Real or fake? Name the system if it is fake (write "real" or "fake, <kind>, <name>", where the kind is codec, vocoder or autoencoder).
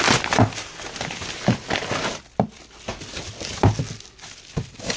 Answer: real